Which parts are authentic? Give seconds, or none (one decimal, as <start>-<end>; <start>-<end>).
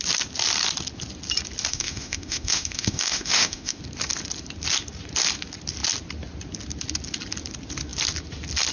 0.0-1.7; 3.8-8.7